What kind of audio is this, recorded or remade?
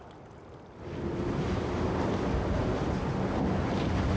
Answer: recorded